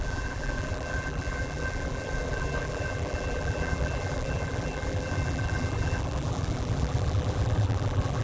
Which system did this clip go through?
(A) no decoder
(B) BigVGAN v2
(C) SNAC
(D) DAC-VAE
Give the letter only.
B